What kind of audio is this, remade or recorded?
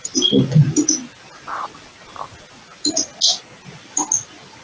recorded